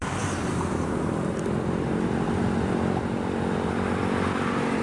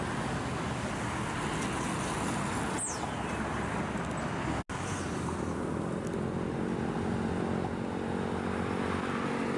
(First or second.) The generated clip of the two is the first